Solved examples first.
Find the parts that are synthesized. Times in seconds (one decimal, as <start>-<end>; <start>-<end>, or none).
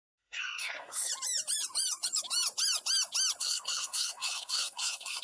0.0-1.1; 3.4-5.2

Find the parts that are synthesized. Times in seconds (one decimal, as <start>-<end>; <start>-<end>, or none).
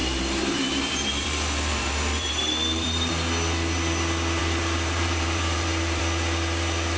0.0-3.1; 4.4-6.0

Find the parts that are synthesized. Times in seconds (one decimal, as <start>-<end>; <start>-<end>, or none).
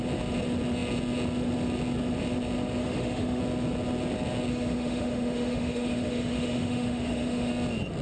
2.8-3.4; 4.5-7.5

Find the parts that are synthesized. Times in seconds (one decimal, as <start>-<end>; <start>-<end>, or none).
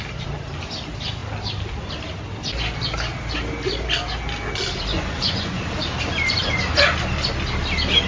4.9-5.6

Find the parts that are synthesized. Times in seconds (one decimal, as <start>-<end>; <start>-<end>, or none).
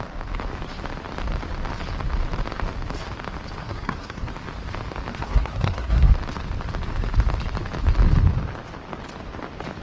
3.6-4.3; 5.1-6.1